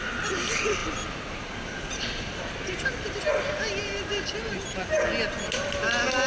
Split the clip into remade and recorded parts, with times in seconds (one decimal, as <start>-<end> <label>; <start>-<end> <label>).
0.0-6.3 recorded